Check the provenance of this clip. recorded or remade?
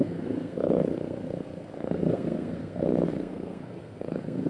remade